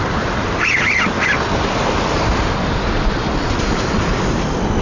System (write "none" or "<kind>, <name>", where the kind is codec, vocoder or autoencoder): none